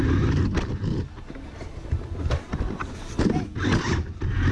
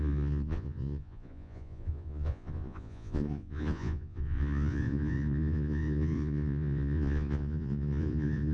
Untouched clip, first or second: first